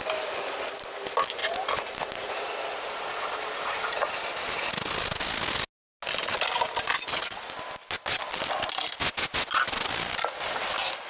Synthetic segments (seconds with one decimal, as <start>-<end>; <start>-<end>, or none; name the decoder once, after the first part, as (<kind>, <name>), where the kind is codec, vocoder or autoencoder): none